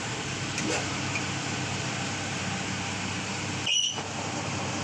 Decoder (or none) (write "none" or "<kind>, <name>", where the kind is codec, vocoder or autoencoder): none